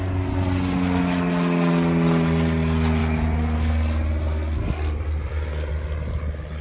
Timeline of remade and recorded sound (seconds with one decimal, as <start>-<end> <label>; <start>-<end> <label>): 0.0-6.6 recorded